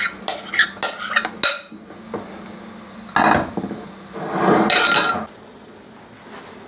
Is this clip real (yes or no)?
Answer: yes